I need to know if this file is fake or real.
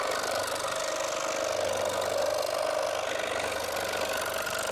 real